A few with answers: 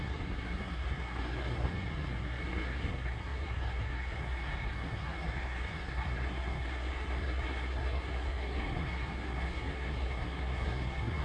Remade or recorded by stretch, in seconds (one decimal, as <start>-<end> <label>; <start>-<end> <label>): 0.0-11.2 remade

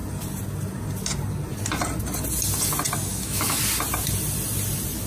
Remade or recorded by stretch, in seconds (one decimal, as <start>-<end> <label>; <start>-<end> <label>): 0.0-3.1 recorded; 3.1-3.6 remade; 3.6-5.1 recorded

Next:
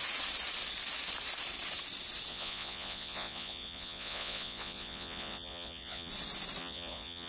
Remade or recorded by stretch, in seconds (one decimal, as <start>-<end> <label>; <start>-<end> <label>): 0.0-2.3 recorded; 2.3-6.1 remade; 6.1-6.6 recorded; 6.6-7.3 remade